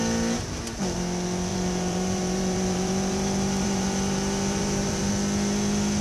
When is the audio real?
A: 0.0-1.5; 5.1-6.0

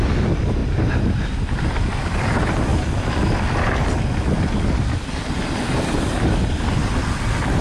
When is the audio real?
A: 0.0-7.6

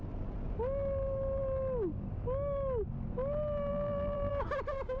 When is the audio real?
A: 0.0-3.7; 4.3-5.0

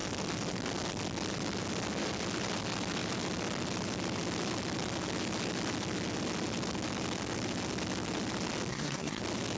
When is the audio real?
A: 0.0-8.7; 9.2-9.6

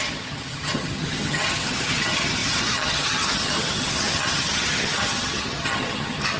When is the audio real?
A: none

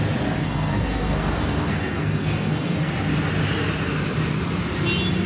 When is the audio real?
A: 0.0-0.4; 2.9-5.3